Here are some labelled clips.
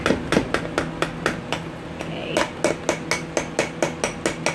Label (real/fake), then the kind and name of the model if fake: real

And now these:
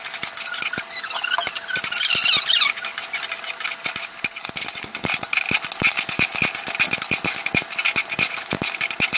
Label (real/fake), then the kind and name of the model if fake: real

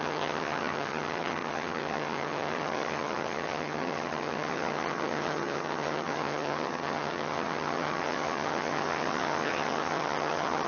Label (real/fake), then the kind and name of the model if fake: fake, vocoder, HiFi-GAN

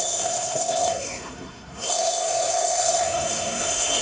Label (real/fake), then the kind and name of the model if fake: fake, codec, SNAC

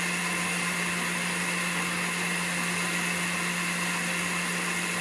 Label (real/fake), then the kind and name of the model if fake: real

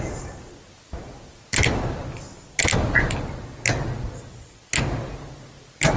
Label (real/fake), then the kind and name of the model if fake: real